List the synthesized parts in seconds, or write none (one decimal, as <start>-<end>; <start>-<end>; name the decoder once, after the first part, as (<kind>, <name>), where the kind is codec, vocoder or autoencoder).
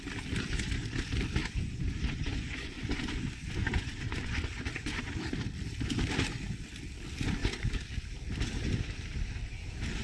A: 1.4-5.0 (vocoder, Vocos)